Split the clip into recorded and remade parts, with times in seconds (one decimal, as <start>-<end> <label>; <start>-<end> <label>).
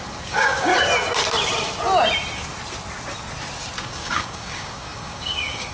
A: 0.0-0.7 remade; 0.7-3.8 recorded; 3.8-5.7 remade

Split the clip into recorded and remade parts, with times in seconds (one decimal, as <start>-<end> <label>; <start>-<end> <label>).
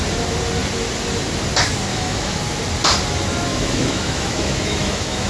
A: 0.0-1.9 recorded; 1.9-2.4 remade; 2.4-3.5 recorded; 3.5-5.3 remade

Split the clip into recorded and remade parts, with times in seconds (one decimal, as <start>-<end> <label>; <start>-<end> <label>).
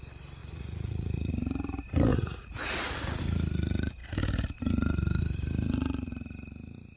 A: 0.0-0.4 recorded; 0.4-1.3 remade; 1.3-2.1 recorded; 2.1-3.2 remade; 3.2-7.0 recorded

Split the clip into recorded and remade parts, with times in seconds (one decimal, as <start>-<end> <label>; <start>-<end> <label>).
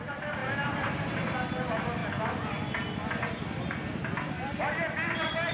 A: 0.0-5.5 recorded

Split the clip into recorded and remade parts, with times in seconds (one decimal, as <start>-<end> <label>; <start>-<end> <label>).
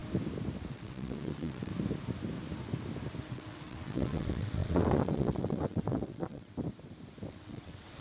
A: 0.0-0.7 recorded; 0.7-1.7 remade; 1.7-3.3 recorded; 3.3-6.6 remade; 6.6-7.3 recorded; 7.3-8.0 remade